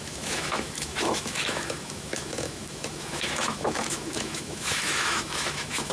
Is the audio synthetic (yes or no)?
yes